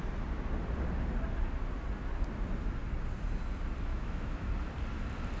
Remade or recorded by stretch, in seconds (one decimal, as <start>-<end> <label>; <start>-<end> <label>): 0.0-3.9 recorded; 3.9-4.5 remade; 4.5-5.4 recorded